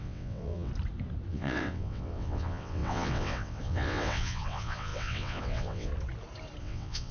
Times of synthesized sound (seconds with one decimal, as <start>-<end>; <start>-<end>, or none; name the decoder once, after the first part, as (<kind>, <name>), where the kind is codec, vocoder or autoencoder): 0.0-0.7 (vocoder, WaveNeXt); 1.3-5.9; 6.6-7.1